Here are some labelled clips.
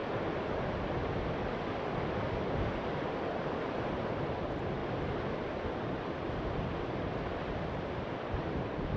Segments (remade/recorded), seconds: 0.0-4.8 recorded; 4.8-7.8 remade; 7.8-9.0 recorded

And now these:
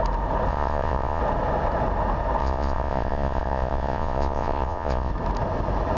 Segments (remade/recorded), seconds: 0.0-0.5 recorded; 0.5-1.2 remade; 1.2-2.4 recorded; 2.4-5.1 remade; 5.1-6.0 recorded

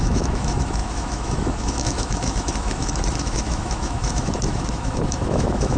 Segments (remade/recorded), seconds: 0.0-5.8 remade